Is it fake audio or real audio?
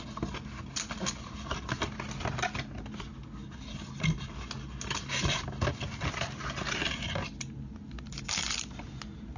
real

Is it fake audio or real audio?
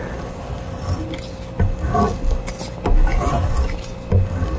real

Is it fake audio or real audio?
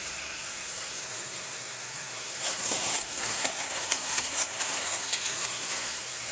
fake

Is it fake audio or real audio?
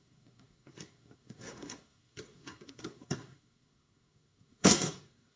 fake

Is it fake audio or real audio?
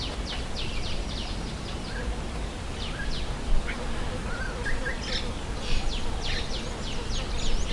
real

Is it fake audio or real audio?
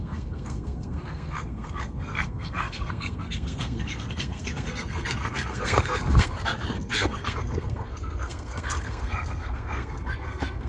fake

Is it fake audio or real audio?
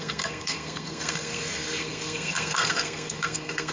fake